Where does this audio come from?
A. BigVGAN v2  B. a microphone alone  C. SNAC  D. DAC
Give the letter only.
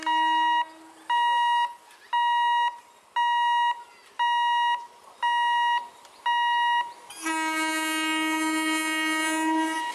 B